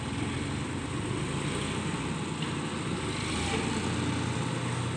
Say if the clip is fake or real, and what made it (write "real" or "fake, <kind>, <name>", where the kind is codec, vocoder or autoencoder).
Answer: real